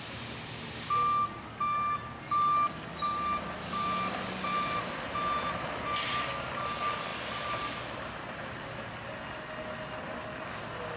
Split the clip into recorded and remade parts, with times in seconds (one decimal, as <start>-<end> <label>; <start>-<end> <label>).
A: 0.0-11.0 recorded